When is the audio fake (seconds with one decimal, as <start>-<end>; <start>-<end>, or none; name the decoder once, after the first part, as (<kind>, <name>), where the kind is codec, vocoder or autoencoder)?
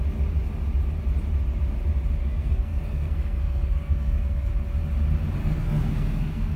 2.2-4.5 (codec, SNAC); 5.4-6.6